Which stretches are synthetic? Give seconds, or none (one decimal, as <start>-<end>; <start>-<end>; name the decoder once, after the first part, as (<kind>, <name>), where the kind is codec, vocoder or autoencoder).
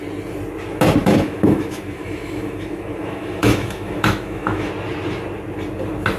1.0-4.7 (autoencoder, DAC-VAE)